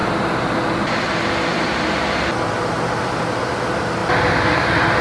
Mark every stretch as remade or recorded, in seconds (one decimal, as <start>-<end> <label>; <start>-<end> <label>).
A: 0.0-5.0 recorded